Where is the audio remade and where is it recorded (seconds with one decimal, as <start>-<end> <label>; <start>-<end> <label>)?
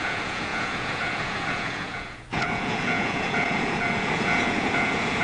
0.0-5.2 remade